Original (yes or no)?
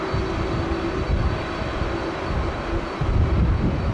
yes